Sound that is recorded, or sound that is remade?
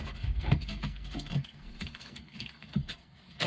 remade